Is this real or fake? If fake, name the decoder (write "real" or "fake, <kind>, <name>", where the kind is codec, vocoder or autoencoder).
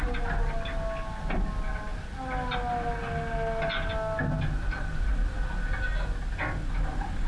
real